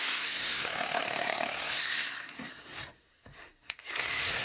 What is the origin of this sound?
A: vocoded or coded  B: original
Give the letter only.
A